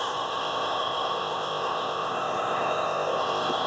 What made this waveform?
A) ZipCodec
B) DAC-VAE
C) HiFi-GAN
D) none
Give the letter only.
A